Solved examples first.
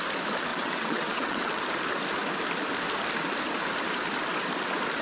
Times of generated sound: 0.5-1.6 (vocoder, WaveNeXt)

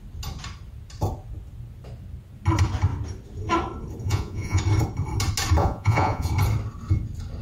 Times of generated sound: 4.0-4.6 (vocoder, Vocos); 5.6-6.3

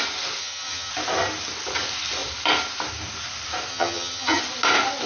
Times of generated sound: 0.4-0.9 (vocoder, HiFi-GAN); 3.7-4.4

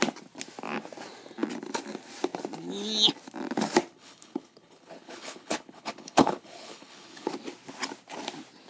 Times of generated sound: 3.9-7.3 (codec, HILCodec)